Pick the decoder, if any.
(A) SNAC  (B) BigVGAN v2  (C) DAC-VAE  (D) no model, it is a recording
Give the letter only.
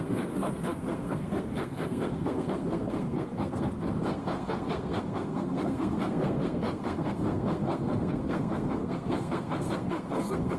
A